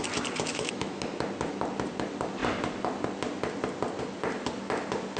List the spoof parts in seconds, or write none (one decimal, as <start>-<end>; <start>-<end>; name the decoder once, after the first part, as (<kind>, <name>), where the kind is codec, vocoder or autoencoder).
0.5-1.0 (autoencoder, DAC-VAE)

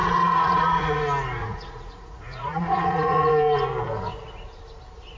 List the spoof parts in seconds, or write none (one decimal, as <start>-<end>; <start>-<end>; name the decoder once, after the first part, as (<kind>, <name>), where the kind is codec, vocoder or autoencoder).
0.0-1.0 (vocoder, Vocos); 1.4-3.3

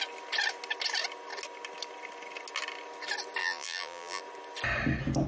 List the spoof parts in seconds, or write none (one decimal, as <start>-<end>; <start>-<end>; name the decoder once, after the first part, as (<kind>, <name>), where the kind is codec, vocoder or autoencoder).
3.4-4.2 (vocoder, BigVGAN v2)

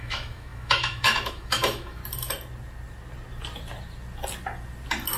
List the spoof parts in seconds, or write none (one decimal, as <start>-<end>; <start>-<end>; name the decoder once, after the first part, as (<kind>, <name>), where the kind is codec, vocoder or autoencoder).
0.0-2.0 (autoencoder, DAC-VAE)

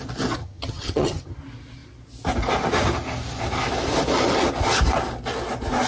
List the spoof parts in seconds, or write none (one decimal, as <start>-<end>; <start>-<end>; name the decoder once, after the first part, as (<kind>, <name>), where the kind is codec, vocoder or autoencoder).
0.4-1.4 (vocoder, HiFi-GAN)